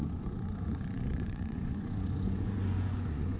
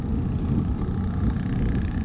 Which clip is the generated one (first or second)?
first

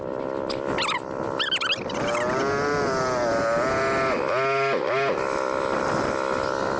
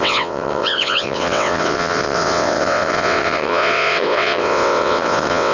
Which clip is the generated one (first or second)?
second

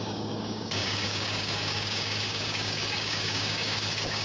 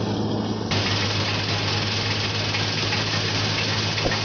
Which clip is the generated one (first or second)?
first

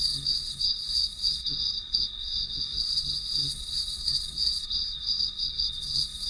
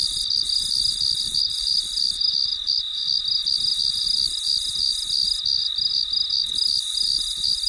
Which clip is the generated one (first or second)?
first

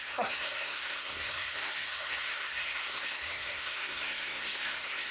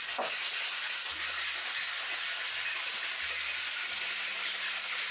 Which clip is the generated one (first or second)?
first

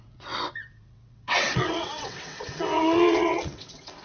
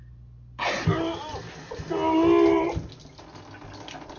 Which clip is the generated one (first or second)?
first